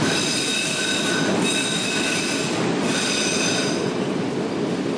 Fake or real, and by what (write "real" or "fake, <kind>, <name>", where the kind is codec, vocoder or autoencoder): fake, vocoder, BigVGAN v2